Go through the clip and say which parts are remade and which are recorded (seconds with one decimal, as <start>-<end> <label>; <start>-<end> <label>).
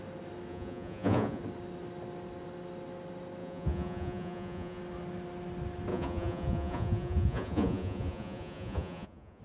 0.0-0.5 recorded; 0.5-1.4 remade; 1.4-3.4 recorded; 3.4-4.8 remade; 4.8-5.9 recorded; 5.9-9.4 remade